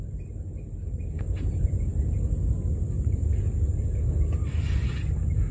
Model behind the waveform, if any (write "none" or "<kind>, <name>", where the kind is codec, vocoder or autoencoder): none